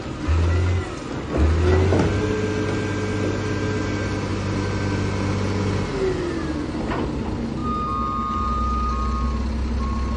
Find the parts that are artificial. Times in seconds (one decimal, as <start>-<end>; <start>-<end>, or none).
none